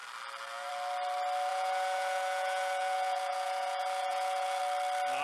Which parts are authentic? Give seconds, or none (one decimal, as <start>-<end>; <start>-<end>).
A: 0.0-1.5; 4.6-5.2